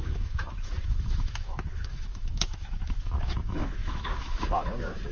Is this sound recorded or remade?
remade